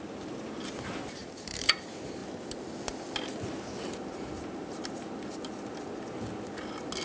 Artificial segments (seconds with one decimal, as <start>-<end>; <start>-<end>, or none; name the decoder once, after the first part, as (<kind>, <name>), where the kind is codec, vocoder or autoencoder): 1.2-1.7 (vocoder, BigVGAN v2)